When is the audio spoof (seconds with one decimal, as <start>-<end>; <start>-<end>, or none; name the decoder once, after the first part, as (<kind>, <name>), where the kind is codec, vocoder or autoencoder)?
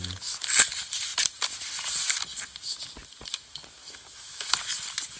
3.8-4.5 (autoencoder, DAC-VAE)